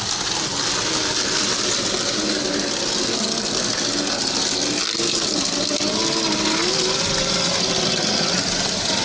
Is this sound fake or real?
real